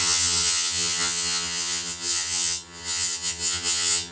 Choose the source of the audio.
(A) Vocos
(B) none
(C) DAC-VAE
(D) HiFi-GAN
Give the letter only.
D